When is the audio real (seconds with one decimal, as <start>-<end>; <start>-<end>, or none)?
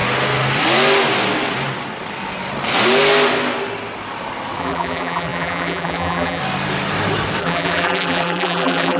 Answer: 0.0-4.6; 6.4-7.4